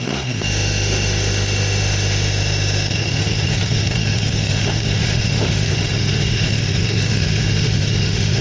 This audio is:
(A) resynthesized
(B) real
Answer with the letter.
A